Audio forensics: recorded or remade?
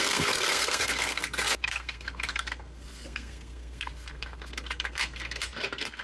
remade